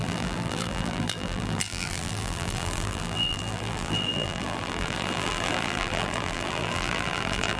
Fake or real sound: fake